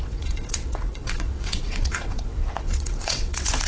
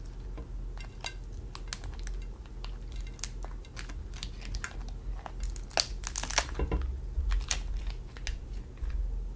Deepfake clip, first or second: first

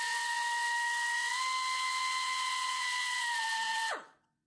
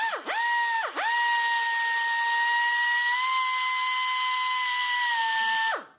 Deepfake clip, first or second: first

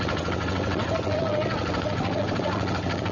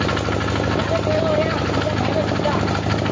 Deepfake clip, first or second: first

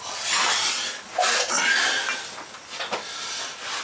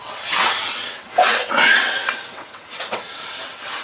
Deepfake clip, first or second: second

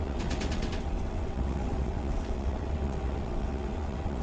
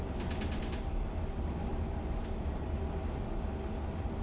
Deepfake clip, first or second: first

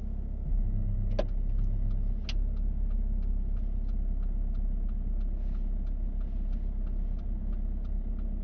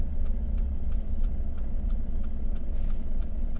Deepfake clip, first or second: second